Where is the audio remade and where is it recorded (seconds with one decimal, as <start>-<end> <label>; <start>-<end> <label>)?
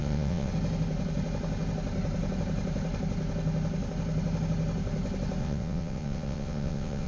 0.0-0.5 remade; 0.5-5.4 recorded; 5.4-7.1 remade